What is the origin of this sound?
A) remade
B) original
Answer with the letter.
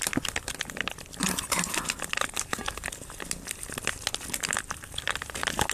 B